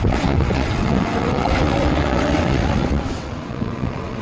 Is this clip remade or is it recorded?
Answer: remade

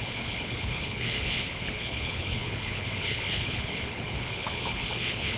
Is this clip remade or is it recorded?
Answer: remade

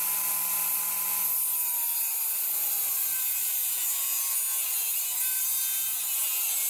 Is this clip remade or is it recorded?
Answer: recorded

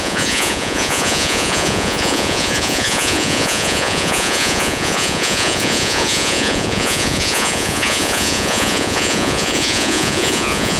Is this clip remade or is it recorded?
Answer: remade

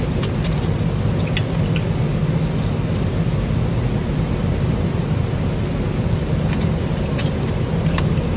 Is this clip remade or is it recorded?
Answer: recorded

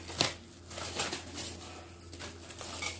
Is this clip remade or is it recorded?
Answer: recorded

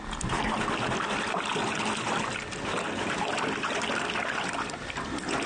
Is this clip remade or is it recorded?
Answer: recorded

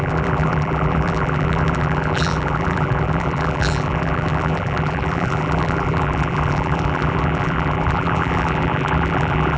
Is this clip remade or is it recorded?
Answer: remade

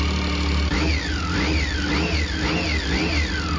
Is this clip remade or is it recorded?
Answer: recorded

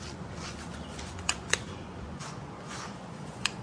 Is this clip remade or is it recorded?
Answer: remade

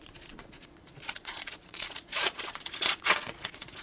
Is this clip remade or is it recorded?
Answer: remade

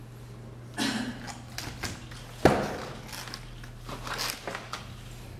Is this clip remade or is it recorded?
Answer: recorded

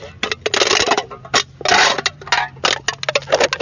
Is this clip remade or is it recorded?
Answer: recorded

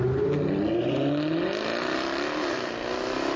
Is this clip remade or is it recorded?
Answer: recorded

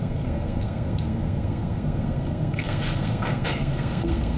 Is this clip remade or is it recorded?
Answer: remade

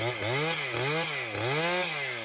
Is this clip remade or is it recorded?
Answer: recorded